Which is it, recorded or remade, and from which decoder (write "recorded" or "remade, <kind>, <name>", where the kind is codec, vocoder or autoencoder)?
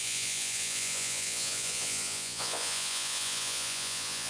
remade, vocoder, Vocos